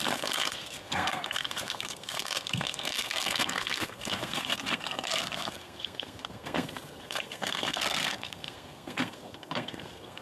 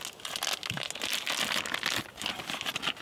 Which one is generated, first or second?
first